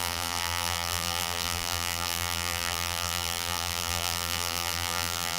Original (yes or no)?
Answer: no